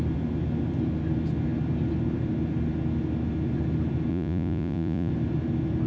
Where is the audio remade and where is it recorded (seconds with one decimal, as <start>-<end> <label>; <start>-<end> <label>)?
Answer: 0.0-4.1 recorded; 4.1-5.1 remade; 5.1-5.9 recorded